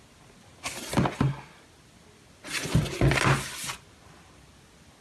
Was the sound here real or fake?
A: real